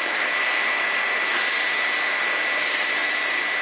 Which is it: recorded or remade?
recorded